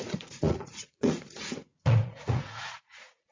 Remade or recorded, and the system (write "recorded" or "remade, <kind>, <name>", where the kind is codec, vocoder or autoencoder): remade, vocoder, Vocos